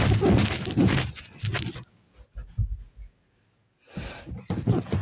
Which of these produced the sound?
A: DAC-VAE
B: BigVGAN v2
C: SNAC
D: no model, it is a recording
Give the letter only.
D